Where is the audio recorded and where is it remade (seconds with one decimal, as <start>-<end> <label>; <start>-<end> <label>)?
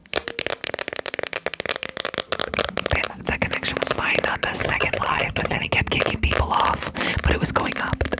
0.0-4.6 recorded; 4.6-5.7 remade; 5.7-8.2 recorded